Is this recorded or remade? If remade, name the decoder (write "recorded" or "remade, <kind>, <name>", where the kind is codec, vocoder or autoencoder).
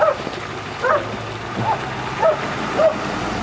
recorded